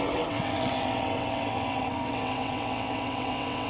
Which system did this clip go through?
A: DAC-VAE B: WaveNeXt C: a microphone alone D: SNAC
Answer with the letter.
B